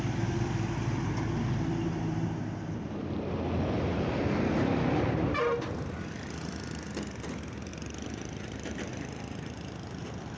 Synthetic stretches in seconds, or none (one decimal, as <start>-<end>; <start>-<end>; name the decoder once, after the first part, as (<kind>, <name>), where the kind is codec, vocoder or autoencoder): 7.7-8.9 (vocoder, BigVGAN v2)